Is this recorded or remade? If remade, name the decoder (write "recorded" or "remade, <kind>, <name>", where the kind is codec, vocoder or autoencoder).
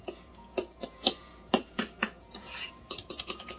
remade, vocoder, Vocos